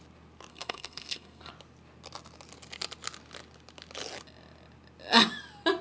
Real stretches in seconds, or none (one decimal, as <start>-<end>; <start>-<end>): 0.0-0.5; 1.5-5.8